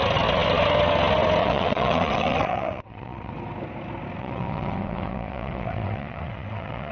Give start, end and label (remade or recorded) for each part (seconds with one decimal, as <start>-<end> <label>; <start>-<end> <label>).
0.0-1.4 recorded; 1.4-3.3 remade; 3.3-4.2 recorded; 4.2-6.9 remade